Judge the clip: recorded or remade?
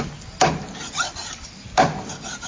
recorded